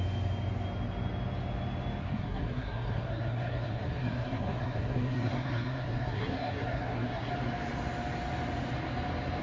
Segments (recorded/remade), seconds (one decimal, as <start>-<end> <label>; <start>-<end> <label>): 0.0-2.0 recorded; 2.0-7.3 remade; 7.3-9.4 recorded